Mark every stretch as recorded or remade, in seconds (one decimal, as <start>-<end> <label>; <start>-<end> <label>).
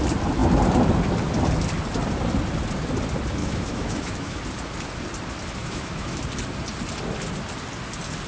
0.0-3.4 recorded; 3.4-4.4 remade; 4.4-5.6 recorded; 5.6-6.2 remade; 6.2-8.3 recorded